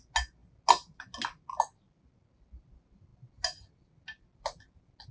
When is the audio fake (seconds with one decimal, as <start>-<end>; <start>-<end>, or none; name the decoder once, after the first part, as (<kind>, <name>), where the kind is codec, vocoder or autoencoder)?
none